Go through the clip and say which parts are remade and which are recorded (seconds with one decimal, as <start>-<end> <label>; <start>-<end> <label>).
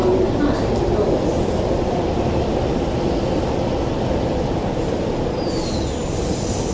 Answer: 0.0-6.7 recorded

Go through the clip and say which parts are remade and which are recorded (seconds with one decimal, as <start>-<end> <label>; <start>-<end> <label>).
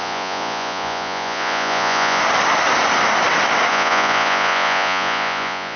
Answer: 0.0-2.2 remade; 2.2-3.7 recorded; 3.7-5.8 remade